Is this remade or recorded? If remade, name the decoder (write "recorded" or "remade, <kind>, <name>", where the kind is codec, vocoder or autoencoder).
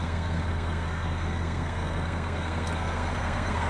remade, codec, SNAC